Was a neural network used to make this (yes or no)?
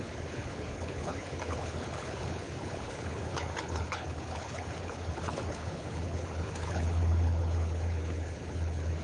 yes